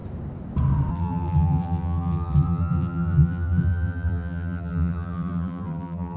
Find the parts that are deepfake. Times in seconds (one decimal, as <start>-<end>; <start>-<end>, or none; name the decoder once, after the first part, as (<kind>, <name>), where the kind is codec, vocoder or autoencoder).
0.9-6.2 (vocoder, BigVGAN v2)